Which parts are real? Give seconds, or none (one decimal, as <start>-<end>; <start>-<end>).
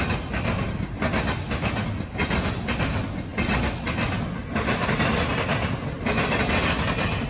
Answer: 0.0-7.3